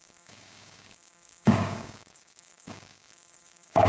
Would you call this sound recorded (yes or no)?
no